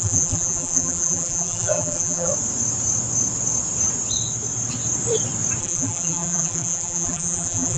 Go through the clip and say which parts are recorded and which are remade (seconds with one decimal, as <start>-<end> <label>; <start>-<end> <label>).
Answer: 0.0-2.3 remade; 2.3-5.6 recorded; 5.6-7.8 remade